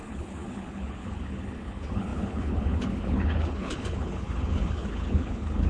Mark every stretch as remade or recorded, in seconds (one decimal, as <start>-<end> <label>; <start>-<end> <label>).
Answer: 0.0-5.7 remade